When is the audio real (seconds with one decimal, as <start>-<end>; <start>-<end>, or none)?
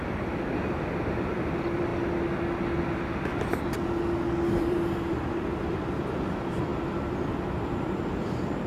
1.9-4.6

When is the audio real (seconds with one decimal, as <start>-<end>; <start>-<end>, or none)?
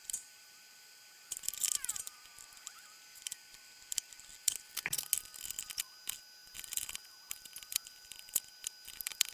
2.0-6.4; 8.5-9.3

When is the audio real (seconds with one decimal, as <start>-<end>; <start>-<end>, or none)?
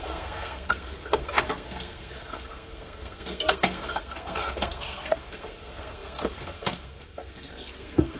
none